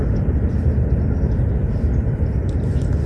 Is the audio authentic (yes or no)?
yes